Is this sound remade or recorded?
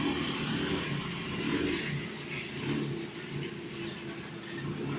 recorded